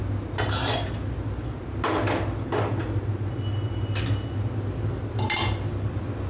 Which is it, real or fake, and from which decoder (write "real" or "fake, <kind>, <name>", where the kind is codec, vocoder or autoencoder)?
real